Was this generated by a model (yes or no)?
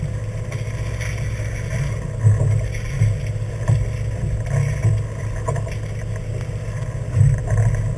no